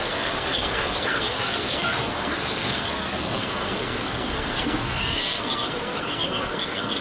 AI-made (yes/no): yes